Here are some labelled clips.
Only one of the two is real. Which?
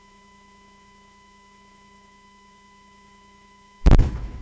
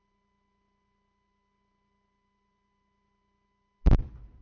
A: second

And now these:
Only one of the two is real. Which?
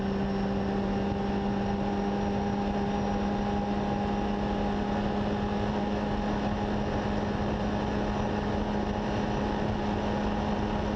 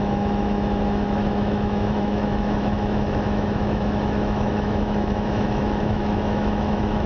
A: first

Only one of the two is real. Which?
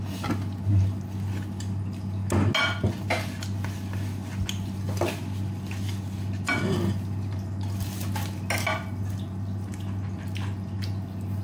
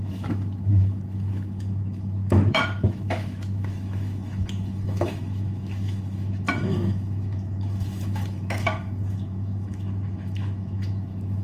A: first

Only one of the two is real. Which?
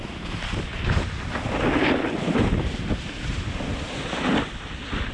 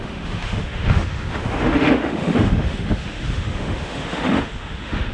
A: first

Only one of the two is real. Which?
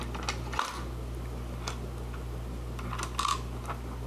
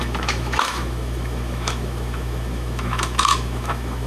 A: first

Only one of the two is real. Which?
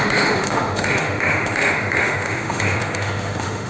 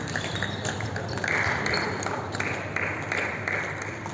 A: second